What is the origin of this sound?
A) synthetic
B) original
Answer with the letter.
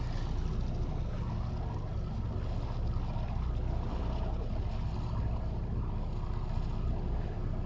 B